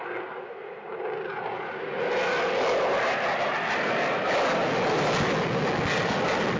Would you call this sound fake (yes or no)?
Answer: no